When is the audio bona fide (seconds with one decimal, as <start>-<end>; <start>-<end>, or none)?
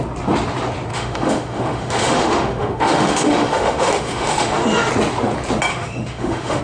0.0-0.9; 4.9-5.7